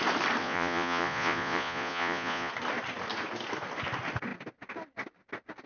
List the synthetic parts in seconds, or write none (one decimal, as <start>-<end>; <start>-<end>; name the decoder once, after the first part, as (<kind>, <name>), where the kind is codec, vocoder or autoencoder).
0.4-2.5 (vocoder, Vocos)